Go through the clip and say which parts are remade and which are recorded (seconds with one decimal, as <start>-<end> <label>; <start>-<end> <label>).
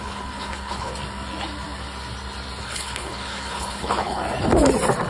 0.0-0.9 remade; 0.9-2.6 recorded; 2.6-4.2 remade; 4.2-5.1 recorded